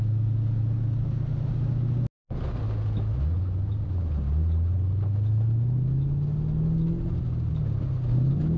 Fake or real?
real